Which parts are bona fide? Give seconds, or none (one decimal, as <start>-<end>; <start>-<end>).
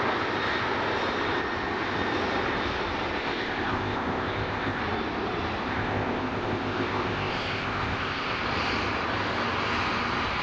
0.0-3.2; 4.8-5.6; 8.4-10.4